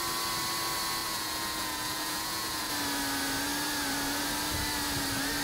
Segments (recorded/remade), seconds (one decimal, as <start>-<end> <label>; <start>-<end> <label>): 0.0-1.0 recorded; 1.0-2.7 remade; 2.7-5.4 recorded